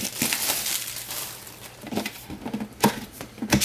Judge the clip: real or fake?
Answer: real